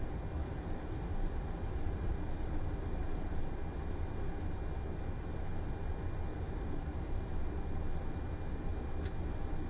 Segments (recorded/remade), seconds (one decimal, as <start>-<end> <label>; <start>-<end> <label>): 0.0-0.4 recorded; 0.4-3.4 remade; 3.4-6.3 recorded; 6.3-7.4 remade; 7.4-9.7 recorded